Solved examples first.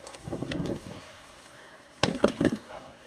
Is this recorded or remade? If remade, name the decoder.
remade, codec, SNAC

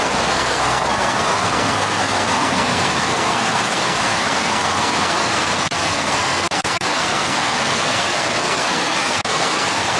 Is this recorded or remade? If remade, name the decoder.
remade, codec, SNAC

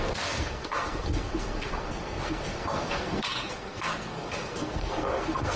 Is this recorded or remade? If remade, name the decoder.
remade, codec, SNAC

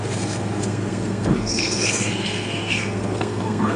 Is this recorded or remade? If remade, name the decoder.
remade, codec, SNAC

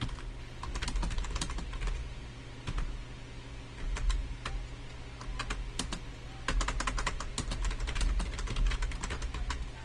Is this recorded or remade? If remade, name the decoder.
recorded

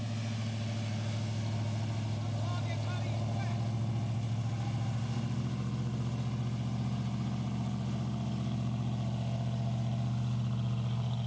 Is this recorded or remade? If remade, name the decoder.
recorded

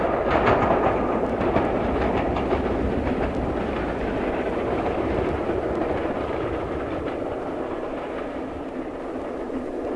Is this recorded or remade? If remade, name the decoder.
recorded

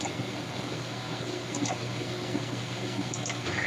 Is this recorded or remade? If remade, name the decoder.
remade, codec, SNAC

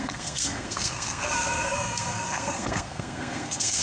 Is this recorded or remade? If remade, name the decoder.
remade, codec, SNAC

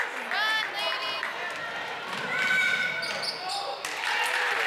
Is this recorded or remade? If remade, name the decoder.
recorded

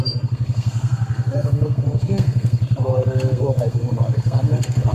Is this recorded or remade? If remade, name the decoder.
remade, codec, SNAC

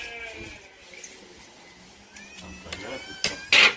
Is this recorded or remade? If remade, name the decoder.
recorded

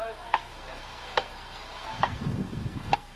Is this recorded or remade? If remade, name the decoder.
remade, codec, SNAC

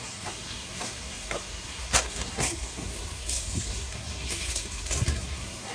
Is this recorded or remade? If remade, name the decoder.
remade, codec, SNAC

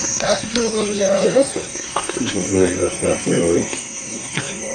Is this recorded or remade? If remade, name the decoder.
remade, codec, SNAC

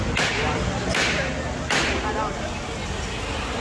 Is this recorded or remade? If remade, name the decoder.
recorded